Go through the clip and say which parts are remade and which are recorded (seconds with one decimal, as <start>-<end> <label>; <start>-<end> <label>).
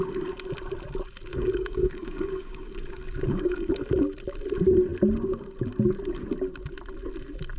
0.0-1.3 recorded; 1.3-3.7 remade; 3.7-7.6 recorded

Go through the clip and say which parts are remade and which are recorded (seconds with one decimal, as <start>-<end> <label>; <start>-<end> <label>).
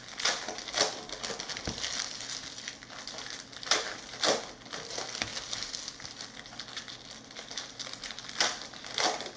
0.0-9.4 recorded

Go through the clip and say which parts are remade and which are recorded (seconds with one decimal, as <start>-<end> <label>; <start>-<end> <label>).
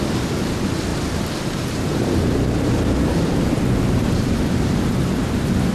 0.0-0.9 recorded; 0.9-4.3 remade; 4.3-5.7 recorded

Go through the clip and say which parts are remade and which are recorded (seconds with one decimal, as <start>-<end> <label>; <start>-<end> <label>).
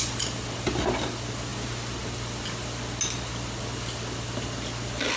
0.0-5.2 recorded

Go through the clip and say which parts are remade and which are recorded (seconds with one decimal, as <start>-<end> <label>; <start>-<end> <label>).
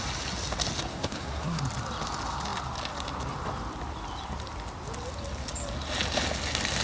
0.0-0.9 recorded; 0.9-1.6 remade; 1.6-6.8 recorded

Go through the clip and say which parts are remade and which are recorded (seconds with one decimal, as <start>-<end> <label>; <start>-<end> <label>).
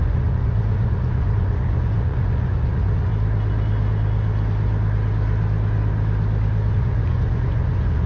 0.0-3.1 remade; 3.1-6.7 recorded; 6.7-8.1 remade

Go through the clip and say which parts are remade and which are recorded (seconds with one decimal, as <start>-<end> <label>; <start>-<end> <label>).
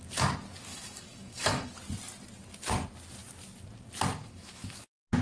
0.0-0.7 recorded; 0.7-1.7 remade; 1.7-4.2 recorded; 4.2-4.8 remade; 4.8-5.2 recorded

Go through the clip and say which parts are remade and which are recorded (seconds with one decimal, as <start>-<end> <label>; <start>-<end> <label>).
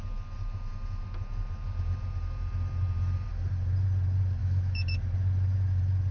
0.0-4.4 recorded; 4.4-5.0 remade; 5.0-6.1 recorded